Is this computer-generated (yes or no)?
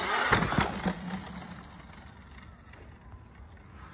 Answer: no